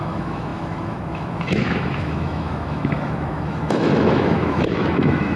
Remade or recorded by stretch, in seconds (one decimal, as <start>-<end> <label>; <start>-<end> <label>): 0.0-5.4 remade